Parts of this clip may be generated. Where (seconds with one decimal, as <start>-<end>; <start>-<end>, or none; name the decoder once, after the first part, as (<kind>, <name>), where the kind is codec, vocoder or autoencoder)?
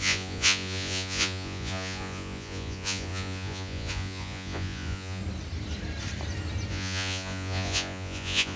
0.0-5.2 (vocoder, Vocos); 6.7-8.6